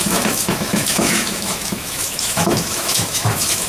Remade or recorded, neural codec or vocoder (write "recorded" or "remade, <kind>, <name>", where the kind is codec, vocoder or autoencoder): remade, autoencoder, DAC-VAE